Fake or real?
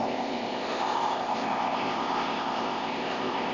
fake